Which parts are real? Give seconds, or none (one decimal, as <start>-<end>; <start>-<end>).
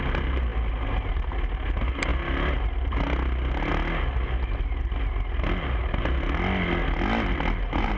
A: 0.0-8.0